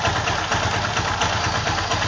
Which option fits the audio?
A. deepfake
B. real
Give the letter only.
B